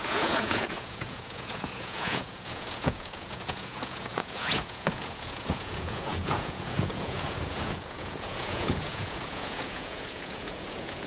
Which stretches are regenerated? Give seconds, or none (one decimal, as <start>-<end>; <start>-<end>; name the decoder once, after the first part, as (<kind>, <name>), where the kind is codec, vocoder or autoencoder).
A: 0.0-11.1 (vocoder, Vocos)